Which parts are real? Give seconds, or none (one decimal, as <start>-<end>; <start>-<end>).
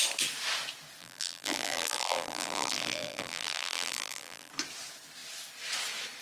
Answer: 0.0-1.0; 4.5-6.2